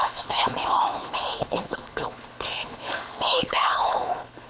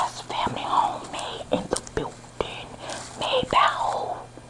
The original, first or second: second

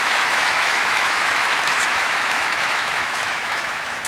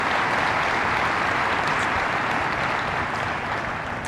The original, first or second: second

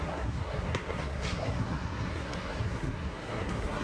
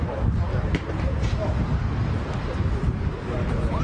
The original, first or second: second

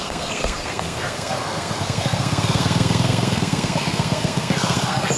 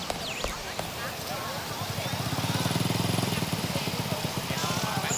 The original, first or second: second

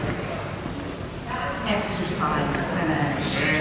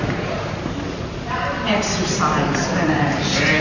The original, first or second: first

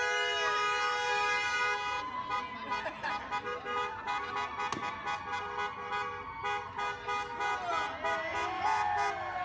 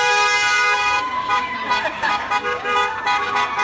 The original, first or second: first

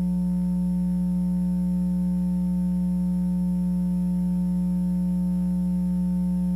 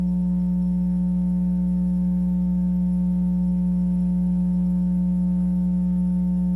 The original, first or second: first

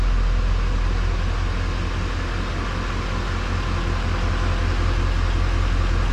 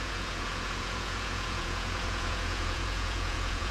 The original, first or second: first